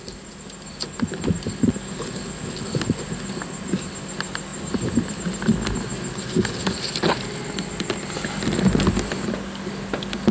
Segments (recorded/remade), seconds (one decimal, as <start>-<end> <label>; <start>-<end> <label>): 0.0-10.3 recorded